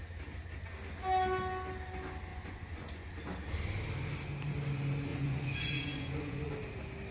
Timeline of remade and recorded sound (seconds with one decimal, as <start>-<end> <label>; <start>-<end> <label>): 0.0-2.3 recorded; 2.3-3.1 remade; 3.1-5.1 recorded; 5.1-6.5 remade; 6.5-7.1 recorded